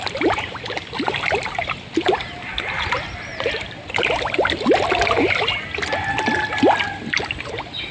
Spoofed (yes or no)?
no